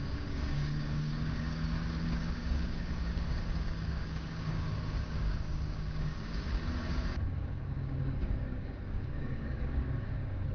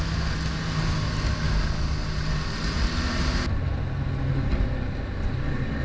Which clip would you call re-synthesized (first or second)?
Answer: first